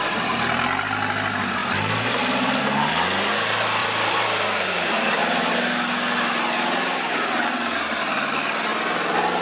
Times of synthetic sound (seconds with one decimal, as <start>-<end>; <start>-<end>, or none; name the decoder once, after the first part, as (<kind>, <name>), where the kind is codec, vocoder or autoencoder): 1.6-2.6 (vocoder, BigVGAN v2); 3.8-5.5